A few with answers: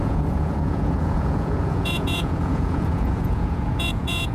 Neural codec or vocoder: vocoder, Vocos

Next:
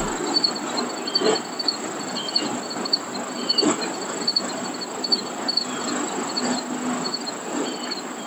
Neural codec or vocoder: vocoder, BigVGAN v2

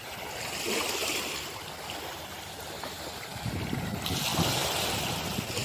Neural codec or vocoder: none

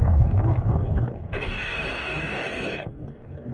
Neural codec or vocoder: codec, DAC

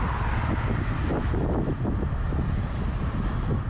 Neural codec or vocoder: none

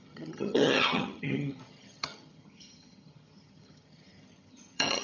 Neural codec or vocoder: vocoder, HiFi-GAN